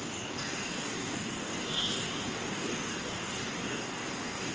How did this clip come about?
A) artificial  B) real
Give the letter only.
A